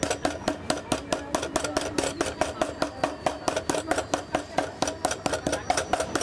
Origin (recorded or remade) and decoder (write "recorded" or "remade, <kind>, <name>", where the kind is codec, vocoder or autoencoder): recorded